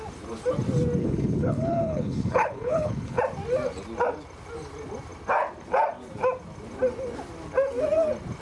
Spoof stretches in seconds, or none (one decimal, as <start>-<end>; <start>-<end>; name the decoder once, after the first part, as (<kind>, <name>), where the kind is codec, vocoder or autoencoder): 1.0-3.2 (codec, HILCodec)